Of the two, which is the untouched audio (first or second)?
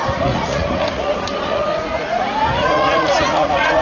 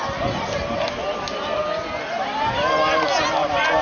second